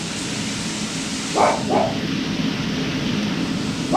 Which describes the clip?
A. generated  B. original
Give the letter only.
B